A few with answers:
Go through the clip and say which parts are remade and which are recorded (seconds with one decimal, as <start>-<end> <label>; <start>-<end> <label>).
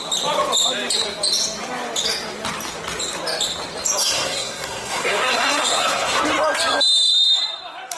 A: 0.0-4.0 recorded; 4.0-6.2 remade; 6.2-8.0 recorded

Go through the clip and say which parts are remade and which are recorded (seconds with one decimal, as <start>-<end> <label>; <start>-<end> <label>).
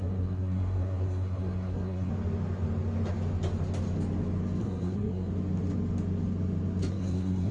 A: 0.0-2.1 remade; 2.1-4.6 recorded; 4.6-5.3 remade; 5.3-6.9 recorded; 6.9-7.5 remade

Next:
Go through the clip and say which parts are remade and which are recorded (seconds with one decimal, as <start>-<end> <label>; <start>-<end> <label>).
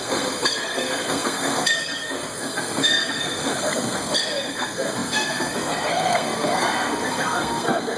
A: 0.0-8.0 remade